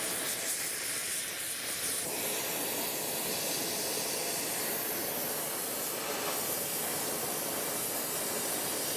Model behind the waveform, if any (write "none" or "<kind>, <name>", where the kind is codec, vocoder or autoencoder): none